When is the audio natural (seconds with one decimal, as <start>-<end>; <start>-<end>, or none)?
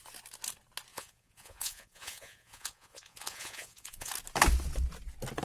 0.0-0.9; 4.1-5.4